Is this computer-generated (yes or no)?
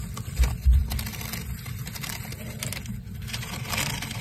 no